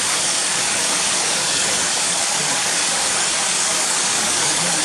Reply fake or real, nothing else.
fake